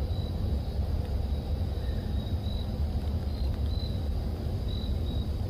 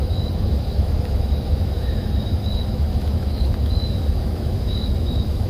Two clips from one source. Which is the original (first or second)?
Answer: first